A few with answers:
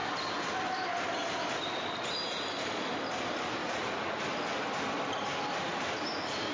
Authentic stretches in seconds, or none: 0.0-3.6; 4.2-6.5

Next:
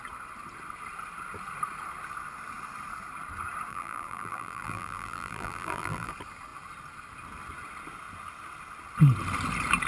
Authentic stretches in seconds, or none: 0.0-3.7; 6.1-9.9